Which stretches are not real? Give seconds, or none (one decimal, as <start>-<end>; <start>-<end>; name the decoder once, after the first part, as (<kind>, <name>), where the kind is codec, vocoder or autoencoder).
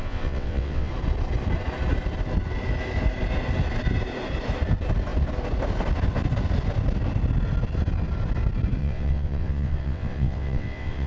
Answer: 0.0-0.9 (vocoder, WaveNeXt); 8.8-11.1